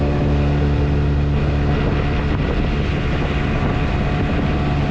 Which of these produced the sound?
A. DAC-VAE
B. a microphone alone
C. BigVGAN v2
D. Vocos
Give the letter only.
B